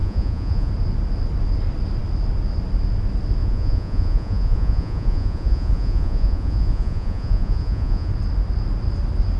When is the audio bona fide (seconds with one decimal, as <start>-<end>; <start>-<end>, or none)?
0.7-3.4; 8.1-9.4